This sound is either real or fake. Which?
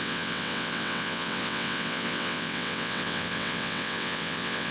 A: fake